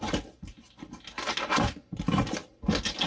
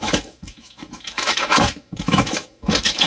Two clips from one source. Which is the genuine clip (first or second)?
first